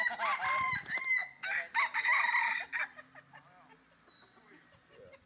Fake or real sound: real